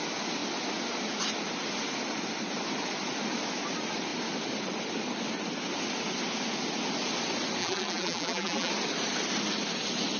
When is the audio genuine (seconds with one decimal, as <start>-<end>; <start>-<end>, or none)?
0.0-7.6; 8.7-10.2